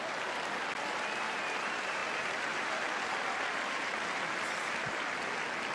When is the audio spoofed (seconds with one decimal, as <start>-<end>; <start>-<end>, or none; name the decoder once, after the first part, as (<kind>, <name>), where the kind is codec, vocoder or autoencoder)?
none